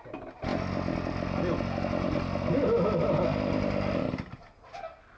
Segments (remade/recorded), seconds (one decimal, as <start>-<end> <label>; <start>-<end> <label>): 0.0-5.2 recorded